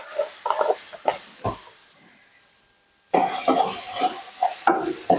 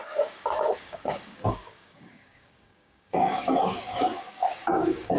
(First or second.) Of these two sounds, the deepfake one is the second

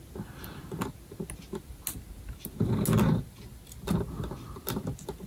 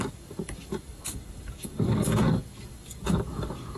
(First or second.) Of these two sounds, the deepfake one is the second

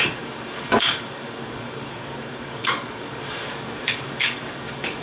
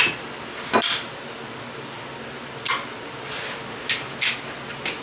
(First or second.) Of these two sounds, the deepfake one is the first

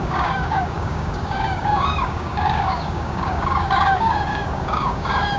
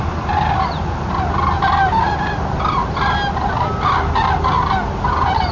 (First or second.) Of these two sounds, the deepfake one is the first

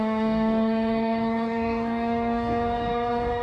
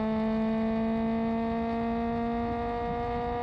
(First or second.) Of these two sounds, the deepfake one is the first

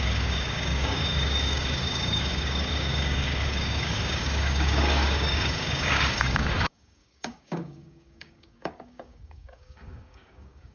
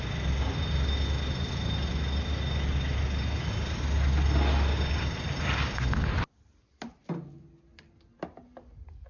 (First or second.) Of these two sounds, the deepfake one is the first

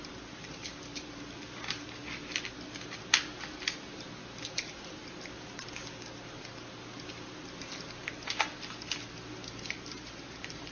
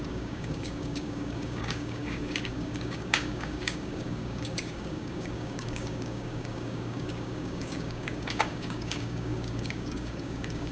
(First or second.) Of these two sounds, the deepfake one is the second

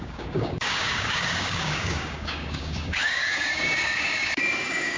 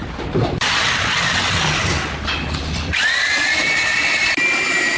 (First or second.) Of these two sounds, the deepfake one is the first